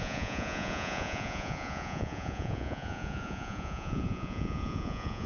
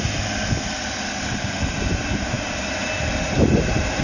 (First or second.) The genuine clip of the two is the second